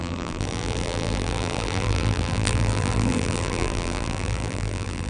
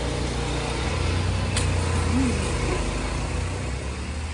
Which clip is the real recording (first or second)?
second